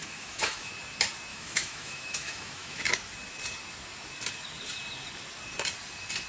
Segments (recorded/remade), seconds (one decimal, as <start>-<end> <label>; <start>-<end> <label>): 0.0-0.7 remade; 0.7-1.3 recorded; 1.3-2.8 remade; 2.8-6.3 recorded